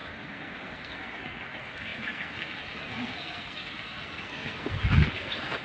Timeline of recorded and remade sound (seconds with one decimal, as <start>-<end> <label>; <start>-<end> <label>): 0.0-5.6 remade